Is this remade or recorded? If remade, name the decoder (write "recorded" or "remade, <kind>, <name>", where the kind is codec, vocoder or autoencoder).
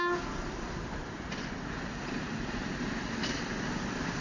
recorded